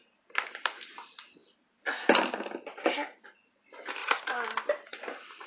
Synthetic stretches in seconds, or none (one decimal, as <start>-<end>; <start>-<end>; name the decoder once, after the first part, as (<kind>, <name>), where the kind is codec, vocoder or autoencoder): 0.6-1.4 (vocoder, BigVGAN v2); 3.2-4.0; 4.9-5.5